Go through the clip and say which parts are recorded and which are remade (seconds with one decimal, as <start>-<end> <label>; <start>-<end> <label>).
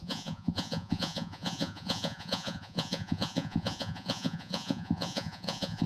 0.0-5.9 remade